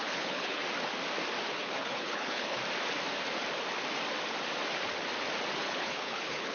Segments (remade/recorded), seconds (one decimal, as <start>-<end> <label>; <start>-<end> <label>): 0.0-0.6 remade; 0.6-1.5 recorded; 1.5-2.6 remade; 2.6-5.6 recorded; 5.6-6.5 remade